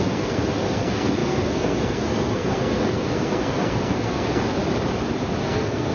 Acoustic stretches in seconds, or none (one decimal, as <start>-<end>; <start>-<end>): 4.6-5.4